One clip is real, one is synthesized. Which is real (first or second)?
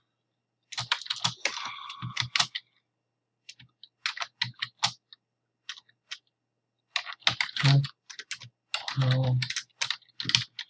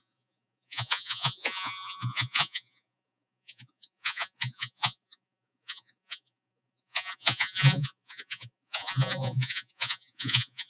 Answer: first